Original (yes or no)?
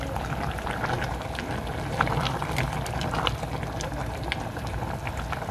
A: no